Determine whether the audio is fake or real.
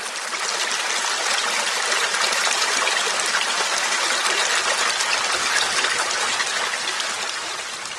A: real